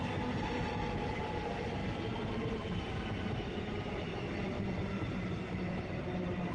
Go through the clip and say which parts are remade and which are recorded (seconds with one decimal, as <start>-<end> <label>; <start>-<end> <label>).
0.0-6.5 recorded